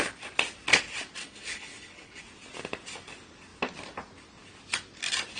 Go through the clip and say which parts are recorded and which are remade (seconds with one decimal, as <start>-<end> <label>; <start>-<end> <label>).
0.0-1.2 recorded; 1.2-2.2 remade; 2.2-5.4 recorded